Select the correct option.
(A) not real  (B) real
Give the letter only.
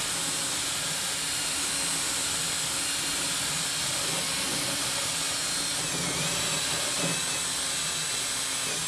B